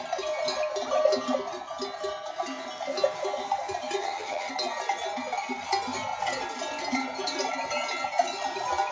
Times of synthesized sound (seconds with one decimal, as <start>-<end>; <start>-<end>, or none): 4.0-4.5

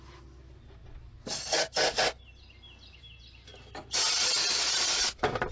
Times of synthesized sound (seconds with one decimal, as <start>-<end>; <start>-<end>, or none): none

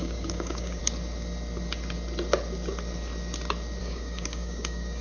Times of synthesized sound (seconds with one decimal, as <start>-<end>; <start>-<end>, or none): 0.0-0.8; 3.8-5.0

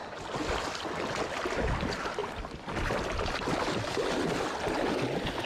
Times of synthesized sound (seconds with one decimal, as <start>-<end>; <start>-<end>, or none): none

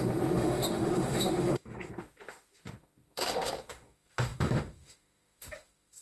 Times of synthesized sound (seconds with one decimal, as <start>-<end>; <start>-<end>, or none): 0.0-6.0

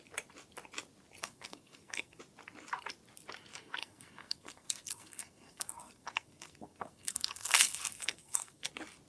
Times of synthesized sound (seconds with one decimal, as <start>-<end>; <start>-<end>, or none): 1.2-2.2; 3.5-8.7

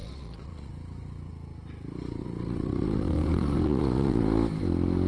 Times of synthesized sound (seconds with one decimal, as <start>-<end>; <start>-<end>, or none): 0.0-0.7; 2.2-4.2

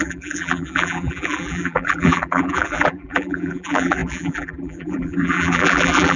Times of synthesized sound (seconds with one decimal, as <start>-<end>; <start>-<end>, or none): 0.0-6.2